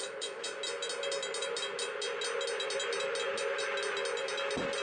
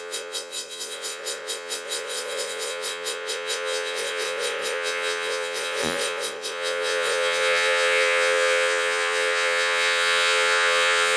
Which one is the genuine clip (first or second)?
first